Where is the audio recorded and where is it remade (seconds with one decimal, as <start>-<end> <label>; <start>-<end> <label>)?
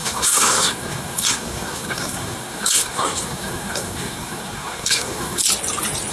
0.0-5.4 remade; 5.4-6.1 recorded